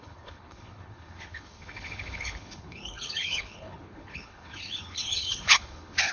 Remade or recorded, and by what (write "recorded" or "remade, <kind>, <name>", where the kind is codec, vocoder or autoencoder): remade, codec, HILCodec